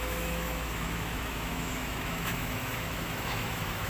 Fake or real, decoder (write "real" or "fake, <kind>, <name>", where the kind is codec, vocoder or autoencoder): fake, autoencoder, DAC-VAE